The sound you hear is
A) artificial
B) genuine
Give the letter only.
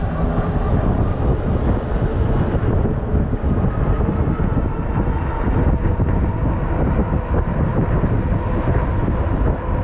B